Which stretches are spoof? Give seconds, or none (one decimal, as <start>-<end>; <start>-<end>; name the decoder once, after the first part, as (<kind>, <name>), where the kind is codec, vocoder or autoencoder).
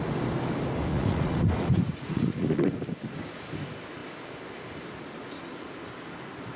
0.9-2.8 (vocoder, Vocos)